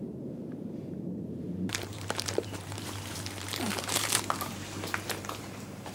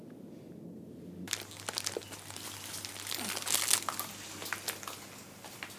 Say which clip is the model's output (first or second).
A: first